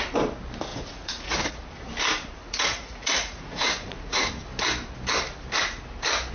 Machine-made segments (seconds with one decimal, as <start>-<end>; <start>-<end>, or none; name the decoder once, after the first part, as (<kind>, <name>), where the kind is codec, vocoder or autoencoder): 0.7-1.5 (vocoder, Vocos); 2.4-4.3

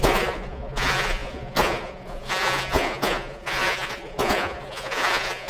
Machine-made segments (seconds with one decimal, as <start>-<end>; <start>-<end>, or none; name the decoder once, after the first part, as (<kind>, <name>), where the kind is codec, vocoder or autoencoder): 0.0-5.5 (vocoder, Vocos)